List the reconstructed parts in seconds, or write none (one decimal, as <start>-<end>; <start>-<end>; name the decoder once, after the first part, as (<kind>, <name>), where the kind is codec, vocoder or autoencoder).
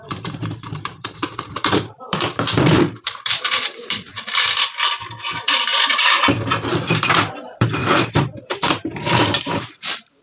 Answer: 0.0-4.1 (vocoder, BigVGAN v2); 5.2-5.7; 6.9-7.8; 8.6-10.2